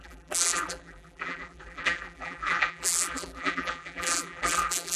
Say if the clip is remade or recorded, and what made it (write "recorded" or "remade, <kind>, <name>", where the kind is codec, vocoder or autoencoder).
remade, vocoder, BigVGAN v2